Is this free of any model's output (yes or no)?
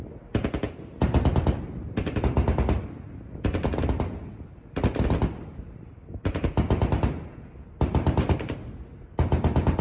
yes